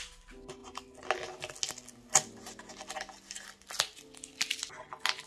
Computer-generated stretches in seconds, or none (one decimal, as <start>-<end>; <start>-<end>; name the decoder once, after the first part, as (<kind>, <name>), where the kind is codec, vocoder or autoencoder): none